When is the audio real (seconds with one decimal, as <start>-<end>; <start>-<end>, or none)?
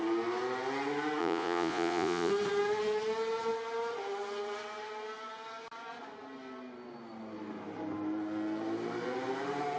0.0-1.2; 2.3-9.8